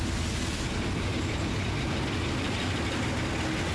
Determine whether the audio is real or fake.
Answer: real